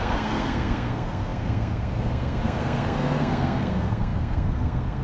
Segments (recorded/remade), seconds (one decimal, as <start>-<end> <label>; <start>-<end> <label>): 0.0-5.0 remade

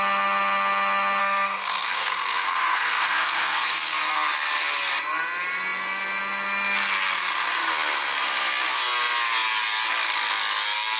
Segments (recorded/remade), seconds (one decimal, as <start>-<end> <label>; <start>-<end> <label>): 0.0-1.2 recorded; 1.2-4.1 remade; 4.1-11.0 recorded

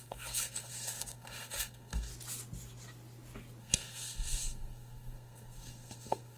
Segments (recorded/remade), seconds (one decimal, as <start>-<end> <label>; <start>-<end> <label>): 0.0-2.1 remade; 2.1-3.6 recorded; 3.6-6.4 remade

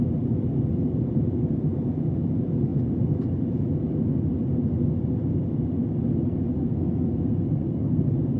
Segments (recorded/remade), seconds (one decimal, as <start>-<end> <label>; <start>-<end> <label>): 0.0-6.6 recorded; 6.6-8.0 remade; 8.0-8.4 recorded